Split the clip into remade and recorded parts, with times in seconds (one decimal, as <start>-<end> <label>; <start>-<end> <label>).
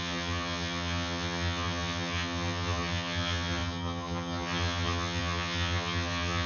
0.0-6.5 remade